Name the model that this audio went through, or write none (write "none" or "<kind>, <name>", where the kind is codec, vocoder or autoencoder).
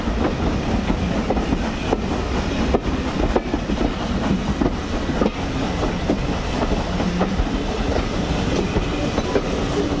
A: none